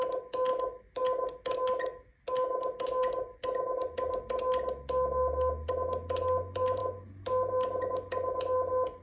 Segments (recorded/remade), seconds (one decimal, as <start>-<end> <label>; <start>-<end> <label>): 0.0-9.0 recorded